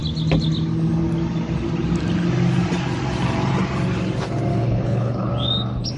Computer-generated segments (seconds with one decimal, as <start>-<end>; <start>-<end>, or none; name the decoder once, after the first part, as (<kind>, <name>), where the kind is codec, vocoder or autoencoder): 4.5-5.3 (codec, HILCodec)